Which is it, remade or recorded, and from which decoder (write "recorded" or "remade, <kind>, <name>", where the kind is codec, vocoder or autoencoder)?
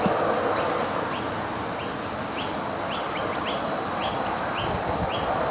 recorded